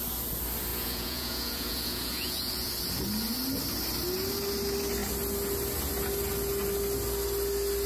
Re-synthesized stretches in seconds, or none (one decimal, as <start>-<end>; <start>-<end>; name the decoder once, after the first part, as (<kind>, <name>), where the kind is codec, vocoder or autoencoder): 0.7-2.7 (vocoder, Vocos)